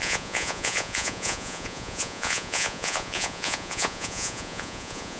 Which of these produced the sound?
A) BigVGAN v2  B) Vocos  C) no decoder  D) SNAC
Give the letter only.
B